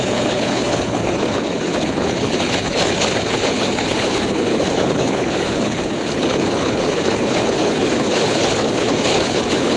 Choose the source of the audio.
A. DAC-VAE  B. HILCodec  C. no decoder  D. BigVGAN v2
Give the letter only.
B